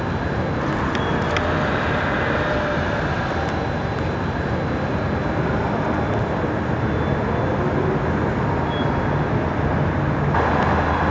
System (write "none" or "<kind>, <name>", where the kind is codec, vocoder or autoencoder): none